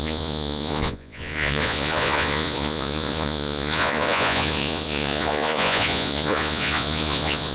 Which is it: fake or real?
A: fake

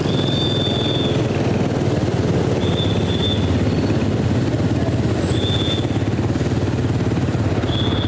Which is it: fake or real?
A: real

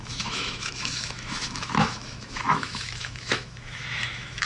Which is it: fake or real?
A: fake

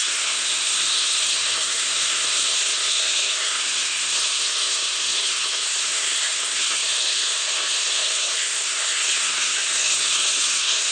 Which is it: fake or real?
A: fake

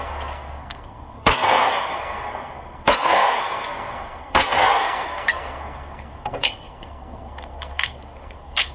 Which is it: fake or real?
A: fake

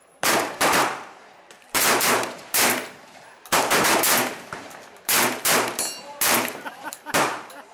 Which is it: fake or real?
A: fake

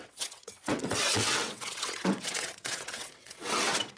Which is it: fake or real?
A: fake